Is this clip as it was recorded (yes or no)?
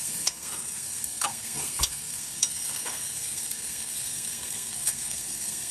no